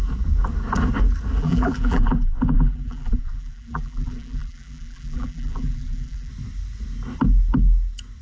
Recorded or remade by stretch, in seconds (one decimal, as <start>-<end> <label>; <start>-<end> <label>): 0.0-1.4 recorded; 1.4-6.3 remade; 6.3-8.2 recorded